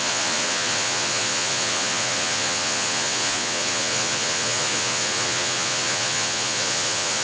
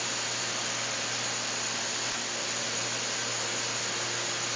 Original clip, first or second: second